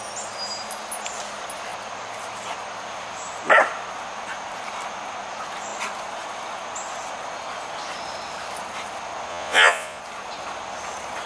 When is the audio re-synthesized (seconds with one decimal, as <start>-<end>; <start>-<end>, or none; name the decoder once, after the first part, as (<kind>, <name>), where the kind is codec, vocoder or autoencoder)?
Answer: 9.3-10.0 (vocoder, Vocos)